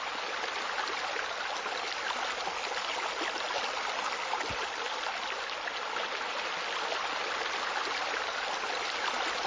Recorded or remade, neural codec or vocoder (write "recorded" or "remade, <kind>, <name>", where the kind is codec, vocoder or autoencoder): recorded